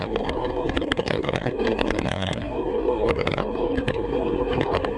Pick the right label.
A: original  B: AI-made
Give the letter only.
B